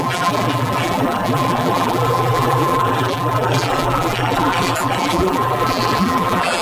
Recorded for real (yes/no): no